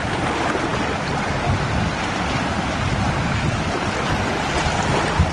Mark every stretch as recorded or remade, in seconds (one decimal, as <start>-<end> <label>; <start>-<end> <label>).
0.0-5.3 recorded

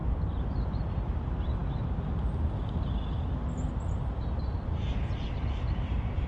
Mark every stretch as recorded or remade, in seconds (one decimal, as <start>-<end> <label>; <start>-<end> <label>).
0.0-6.3 recorded

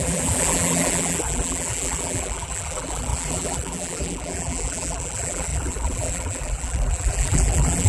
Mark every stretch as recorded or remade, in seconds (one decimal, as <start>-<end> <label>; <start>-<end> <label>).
0.0-7.9 remade